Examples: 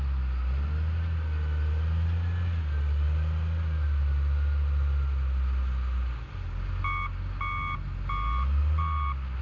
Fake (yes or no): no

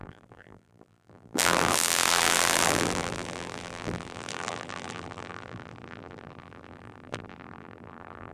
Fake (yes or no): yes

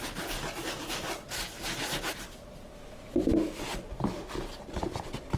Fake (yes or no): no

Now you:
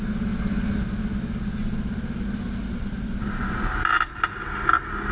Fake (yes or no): no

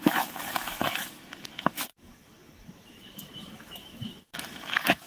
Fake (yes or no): yes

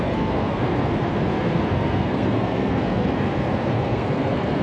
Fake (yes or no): yes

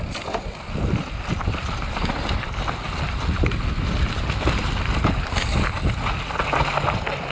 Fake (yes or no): no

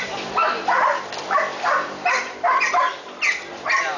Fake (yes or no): yes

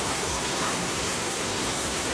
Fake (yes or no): yes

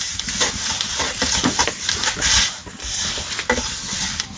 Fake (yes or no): no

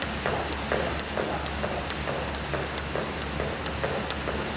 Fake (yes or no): no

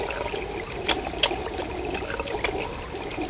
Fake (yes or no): no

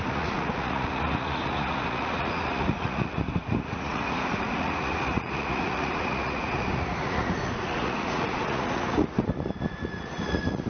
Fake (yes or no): yes